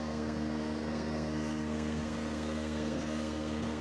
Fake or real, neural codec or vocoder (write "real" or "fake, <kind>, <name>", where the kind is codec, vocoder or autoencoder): fake, codec, SNAC